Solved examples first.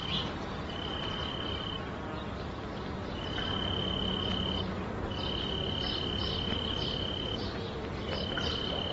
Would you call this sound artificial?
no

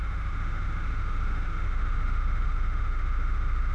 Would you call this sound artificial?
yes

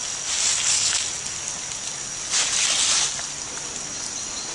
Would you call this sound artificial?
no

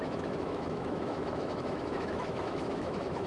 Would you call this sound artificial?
yes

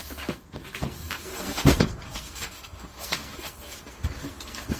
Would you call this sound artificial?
yes